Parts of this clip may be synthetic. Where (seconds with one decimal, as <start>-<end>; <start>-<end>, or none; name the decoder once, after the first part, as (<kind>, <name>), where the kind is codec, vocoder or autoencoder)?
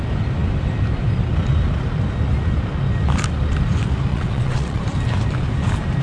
4.1-4.8 (vocoder, WaveNeXt)